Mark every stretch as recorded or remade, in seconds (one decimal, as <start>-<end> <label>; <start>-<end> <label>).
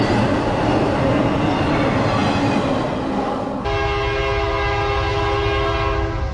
0.0-6.3 recorded